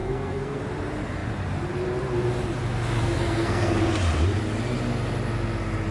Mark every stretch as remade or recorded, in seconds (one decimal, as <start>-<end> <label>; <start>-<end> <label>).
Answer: 0.0-0.6 remade; 0.6-3.0 recorded; 3.0-3.9 remade; 3.9-5.9 recorded